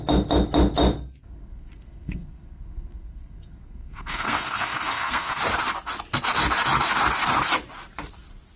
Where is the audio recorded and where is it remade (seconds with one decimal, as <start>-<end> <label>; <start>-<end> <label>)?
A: 0.0-1.2 recorded; 1.2-5.4 remade; 5.4-8.6 recorded